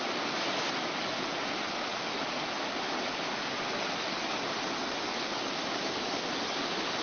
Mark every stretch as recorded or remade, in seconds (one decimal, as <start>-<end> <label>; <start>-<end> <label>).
0.0-5.1 recorded; 5.1-5.6 remade; 5.6-7.0 recorded